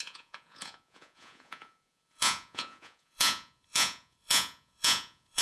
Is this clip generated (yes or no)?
yes